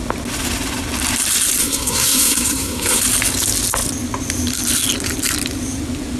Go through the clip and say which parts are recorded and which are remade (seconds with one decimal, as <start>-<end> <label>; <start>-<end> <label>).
0.0-1.6 recorded; 1.6-3.0 remade; 3.0-6.2 recorded